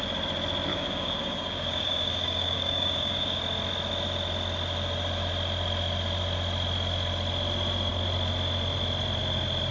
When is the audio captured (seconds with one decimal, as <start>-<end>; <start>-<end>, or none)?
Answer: 0.0-0.7; 3.4-9.7